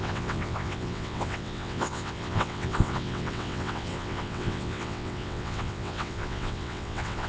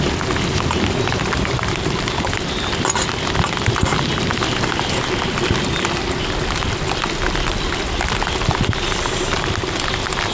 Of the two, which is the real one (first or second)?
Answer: second